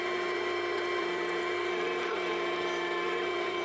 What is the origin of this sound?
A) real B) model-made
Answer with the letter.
B